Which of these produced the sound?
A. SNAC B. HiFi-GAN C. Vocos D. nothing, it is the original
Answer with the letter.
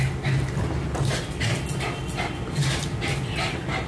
D